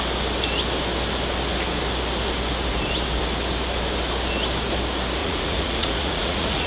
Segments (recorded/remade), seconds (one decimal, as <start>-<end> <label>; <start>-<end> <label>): 0.0-5.2 recorded; 5.2-6.7 remade